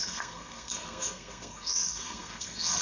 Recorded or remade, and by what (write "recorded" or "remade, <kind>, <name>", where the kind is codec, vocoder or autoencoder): remade, codec, SNAC